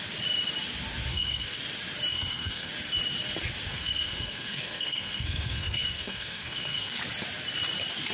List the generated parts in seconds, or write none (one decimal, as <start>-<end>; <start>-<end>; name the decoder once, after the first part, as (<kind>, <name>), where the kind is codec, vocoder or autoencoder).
1.1-1.6 (codec, SNAC); 2.1-2.7; 3.7-7.0